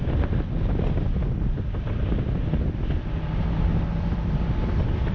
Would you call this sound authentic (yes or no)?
yes